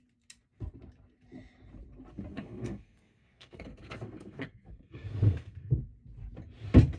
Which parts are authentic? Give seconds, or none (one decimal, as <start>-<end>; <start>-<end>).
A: 0.0-2.3; 5.8-7.0